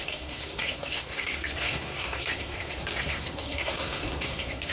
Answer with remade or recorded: remade